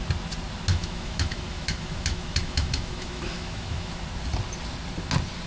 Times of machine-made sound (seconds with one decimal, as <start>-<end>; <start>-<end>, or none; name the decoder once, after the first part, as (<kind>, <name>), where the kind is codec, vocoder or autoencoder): 0.7-4.0 (autoencoder, DAC-VAE)